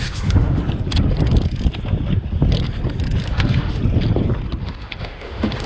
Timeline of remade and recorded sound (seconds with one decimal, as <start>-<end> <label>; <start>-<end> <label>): 0.0-0.6 remade; 0.6-3.3 recorded; 3.3-3.8 remade; 3.8-4.6 recorded; 4.6-5.7 remade